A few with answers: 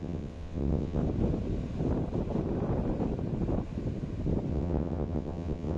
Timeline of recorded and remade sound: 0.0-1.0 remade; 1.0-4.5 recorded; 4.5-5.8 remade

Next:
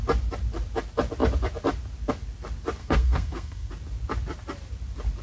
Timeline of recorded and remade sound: 0.0-2.8 recorded; 2.8-3.7 remade; 3.7-5.2 recorded